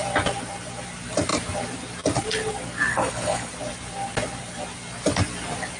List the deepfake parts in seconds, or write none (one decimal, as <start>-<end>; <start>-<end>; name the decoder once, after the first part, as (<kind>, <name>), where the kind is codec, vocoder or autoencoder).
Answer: 2.9-3.5 (codec, HILCodec)